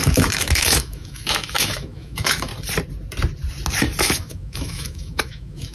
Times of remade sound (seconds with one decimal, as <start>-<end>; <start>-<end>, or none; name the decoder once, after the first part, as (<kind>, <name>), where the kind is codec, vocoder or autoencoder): 0.0-2.5 (autoencoder, DAC-VAE); 4.0-5.7